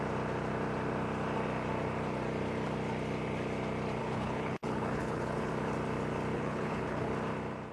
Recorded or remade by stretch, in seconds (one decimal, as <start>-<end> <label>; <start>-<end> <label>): 0.0-4.0 recorded; 4.0-5.5 remade; 5.5-6.3 recorded; 6.3-7.1 remade; 7.1-7.7 recorded